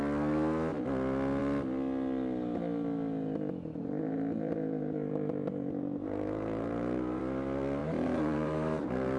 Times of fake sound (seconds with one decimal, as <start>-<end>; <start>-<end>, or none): 3.8-7.2; 7.8-9.2